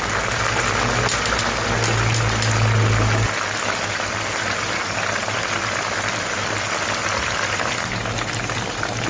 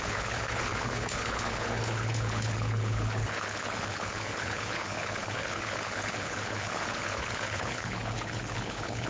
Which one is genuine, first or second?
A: first